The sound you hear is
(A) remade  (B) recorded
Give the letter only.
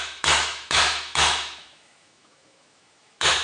A